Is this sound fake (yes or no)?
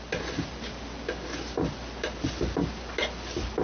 no